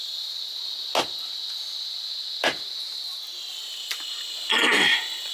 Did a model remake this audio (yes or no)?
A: no